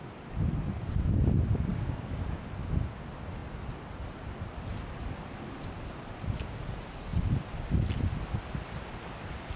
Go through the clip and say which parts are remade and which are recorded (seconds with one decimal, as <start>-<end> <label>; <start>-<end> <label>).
0.0-1.7 recorded; 1.7-2.4 remade; 2.4-9.6 recorded

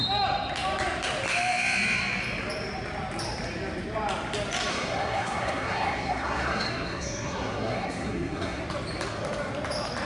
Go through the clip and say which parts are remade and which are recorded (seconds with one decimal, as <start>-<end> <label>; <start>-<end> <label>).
0.0-4.7 recorded; 4.7-8.6 remade; 8.6-10.0 recorded